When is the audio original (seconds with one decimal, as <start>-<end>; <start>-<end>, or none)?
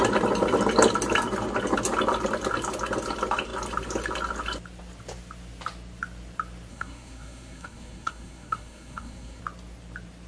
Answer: 0.0-6.7; 9.4-10.3